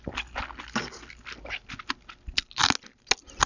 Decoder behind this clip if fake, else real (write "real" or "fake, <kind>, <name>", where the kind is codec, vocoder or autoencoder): real